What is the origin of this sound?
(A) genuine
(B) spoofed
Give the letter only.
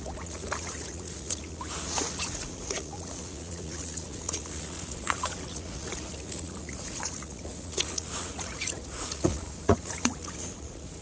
B